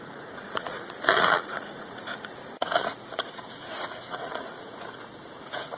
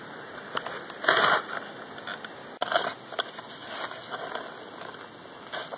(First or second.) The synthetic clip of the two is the first